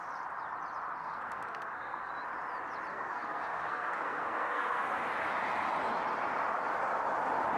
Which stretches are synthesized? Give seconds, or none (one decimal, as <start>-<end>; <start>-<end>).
1.0-2.1; 2.9-5.0